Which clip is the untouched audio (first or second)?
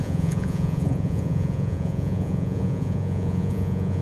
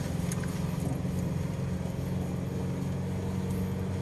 second